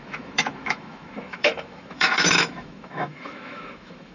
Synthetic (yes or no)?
yes